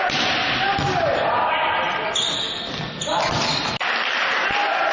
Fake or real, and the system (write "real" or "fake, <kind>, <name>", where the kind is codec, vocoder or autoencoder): real